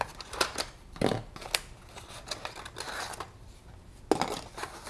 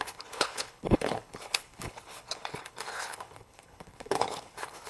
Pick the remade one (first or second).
second